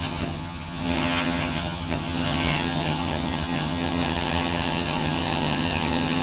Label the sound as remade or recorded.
remade